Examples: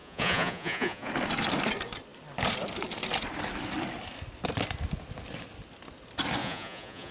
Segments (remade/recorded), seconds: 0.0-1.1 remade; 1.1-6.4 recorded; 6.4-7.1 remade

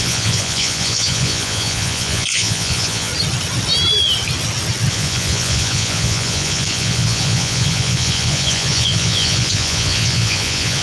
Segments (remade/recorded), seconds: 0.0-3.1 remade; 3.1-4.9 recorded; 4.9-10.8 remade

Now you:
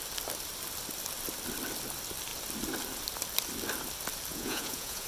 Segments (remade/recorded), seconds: 0.0-4.3 recorded; 4.3-5.1 remade

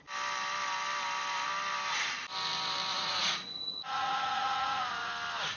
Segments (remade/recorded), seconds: 0.0-2.9 recorded; 2.9-5.1 remade; 5.1-5.6 recorded

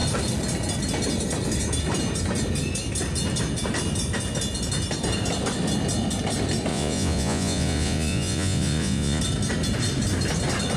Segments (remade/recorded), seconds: 0.0-6.7 recorded; 6.7-9.2 remade; 9.2-10.8 recorded